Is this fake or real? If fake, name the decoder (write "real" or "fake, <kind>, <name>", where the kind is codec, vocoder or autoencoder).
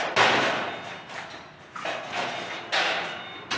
real